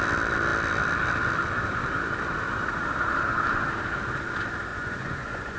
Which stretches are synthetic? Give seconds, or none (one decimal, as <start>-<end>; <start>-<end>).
4.7-5.6